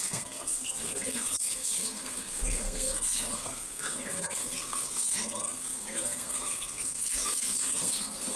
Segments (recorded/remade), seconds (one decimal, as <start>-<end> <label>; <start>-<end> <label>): 0.0-8.4 remade